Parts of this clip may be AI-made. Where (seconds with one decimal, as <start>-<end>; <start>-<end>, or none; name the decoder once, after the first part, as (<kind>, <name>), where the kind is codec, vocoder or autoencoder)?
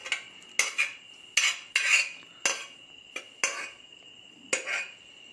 none